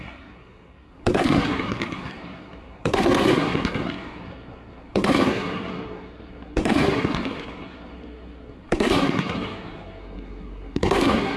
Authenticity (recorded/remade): remade